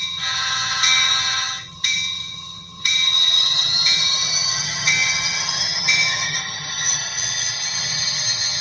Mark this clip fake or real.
fake